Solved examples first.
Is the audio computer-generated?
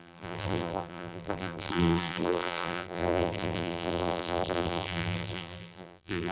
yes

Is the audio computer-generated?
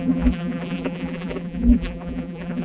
yes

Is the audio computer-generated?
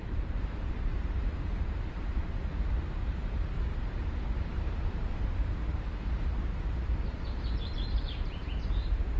yes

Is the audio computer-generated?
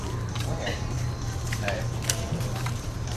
yes